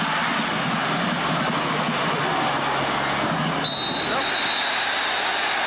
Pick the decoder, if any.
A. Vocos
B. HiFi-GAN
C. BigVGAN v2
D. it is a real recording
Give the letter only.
D